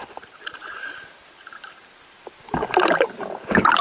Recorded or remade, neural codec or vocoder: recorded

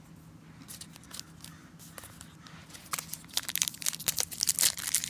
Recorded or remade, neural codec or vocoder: recorded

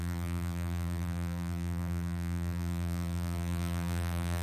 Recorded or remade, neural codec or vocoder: remade, vocoder, BigVGAN v2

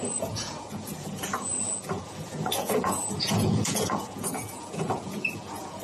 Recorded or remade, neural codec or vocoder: remade, vocoder, Vocos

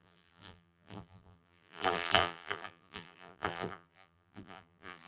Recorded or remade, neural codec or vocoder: remade, vocoder, BigVGAN v2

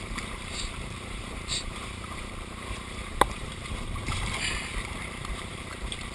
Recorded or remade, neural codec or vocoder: remade, vocoder, BigVGAN v2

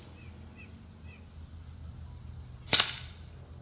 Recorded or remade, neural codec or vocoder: recorded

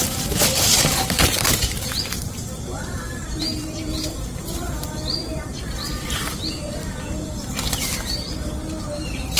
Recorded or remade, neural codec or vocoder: remade, vocoder, BigVGAN v2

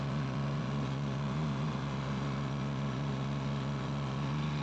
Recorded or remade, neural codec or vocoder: remade, vocoder, Vocos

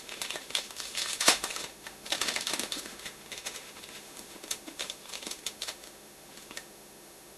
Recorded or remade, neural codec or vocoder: remade, autoencoder, DAC-VAE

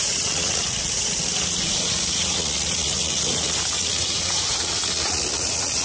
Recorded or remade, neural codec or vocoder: remade, vocoder, Vocos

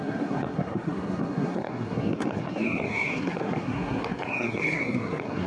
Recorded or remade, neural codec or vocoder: remade, codec, SNAC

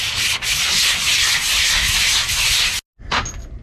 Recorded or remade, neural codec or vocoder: recorded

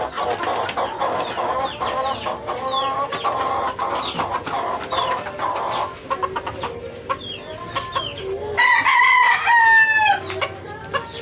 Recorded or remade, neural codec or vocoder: recorded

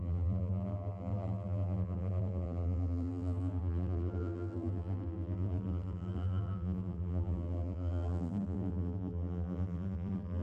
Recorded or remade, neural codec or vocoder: remade, vocoder, BigVGAN v2